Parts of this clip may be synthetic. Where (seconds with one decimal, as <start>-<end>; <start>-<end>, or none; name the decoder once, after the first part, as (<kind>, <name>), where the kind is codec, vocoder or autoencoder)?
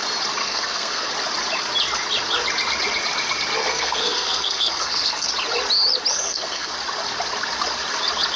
0.4-1.1 (codec, SNAC); 3.6-5.3; 6.1-6.7